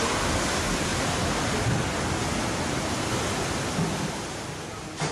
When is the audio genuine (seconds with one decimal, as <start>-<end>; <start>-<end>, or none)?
0.0-5.1